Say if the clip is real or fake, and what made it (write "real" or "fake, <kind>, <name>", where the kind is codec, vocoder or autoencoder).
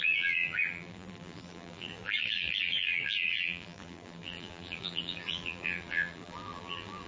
fake, vocoder, BigVGAN v2